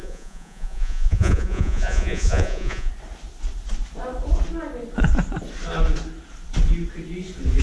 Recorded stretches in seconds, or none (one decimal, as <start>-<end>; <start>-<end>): 2.9-7.6